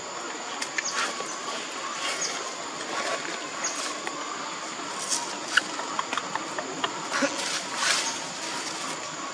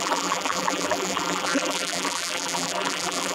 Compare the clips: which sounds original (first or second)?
first